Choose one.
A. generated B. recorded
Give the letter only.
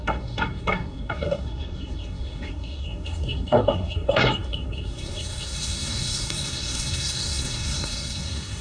A